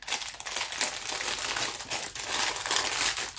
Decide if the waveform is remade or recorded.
recorded